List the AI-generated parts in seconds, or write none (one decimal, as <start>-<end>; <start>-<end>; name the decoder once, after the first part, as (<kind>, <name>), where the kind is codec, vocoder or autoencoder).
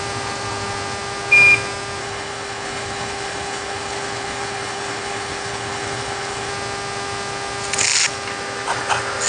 2.0-6.5 (codec, HILCodec)